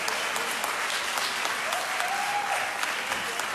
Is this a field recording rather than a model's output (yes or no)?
yes